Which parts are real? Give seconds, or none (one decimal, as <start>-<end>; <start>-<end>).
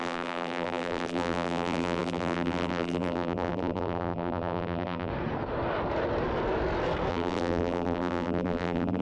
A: 5.1-7.1